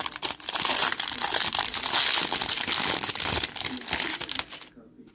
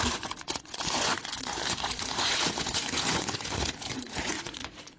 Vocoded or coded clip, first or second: second